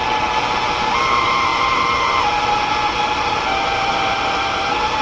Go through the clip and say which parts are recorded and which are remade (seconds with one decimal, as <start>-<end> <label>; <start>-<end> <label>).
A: 0.0-5.0 recorded